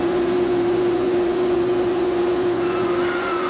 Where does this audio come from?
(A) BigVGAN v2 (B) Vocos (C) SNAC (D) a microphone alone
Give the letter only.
B